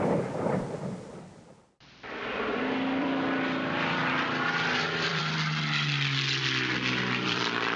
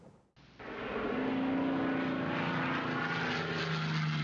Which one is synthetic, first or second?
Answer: first